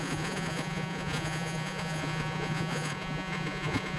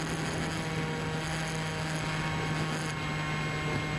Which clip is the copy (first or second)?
first